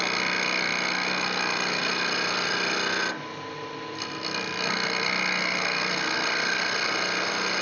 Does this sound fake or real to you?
real